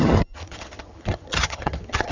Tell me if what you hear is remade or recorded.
remade